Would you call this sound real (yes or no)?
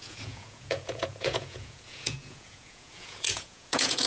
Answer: no